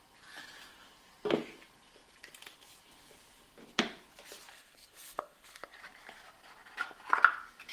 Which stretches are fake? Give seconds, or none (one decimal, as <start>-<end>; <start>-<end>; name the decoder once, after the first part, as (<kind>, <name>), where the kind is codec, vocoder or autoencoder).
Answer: 4.5-5.8 (codec, SNAC)